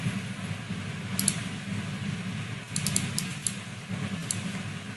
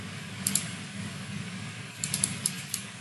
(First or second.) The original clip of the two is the first